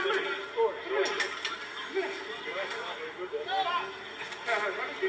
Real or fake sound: real